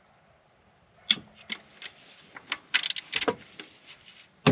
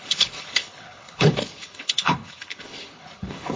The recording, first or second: first